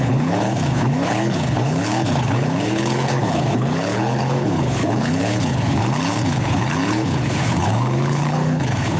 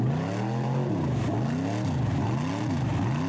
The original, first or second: second